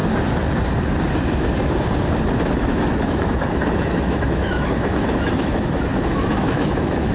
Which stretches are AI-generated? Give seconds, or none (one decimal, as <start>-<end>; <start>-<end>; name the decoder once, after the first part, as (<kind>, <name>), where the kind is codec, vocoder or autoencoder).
2.5-7.1 (autoencoder, DAC-VAE)